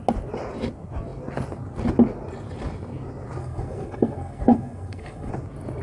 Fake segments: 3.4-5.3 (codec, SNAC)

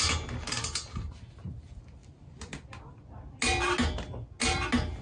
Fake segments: none

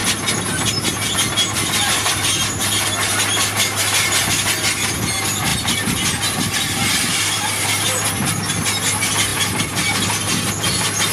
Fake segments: none

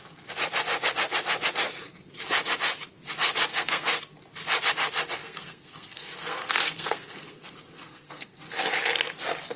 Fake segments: 3.5-4.0 (codec, SNAC); 5.2-8.4